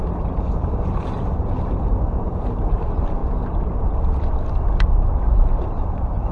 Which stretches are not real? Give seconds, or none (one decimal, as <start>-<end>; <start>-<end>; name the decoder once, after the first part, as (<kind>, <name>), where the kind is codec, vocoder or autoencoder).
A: 0.0-3.2 (vocoder, BigVGAN v2); 5.7-6.3

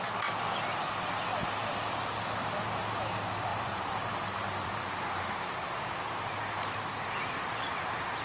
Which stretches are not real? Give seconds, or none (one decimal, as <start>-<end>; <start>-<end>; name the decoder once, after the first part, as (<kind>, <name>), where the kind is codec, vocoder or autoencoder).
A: 3.5-7.7 (vocoder, BigVGAN v2)